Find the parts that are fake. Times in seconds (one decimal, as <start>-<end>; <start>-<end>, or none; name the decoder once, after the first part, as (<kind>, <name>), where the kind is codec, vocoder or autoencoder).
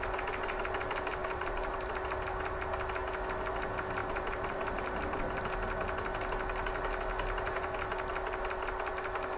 1.2-1.9 (vocoder, BigVGAN v2); 4.0-5.4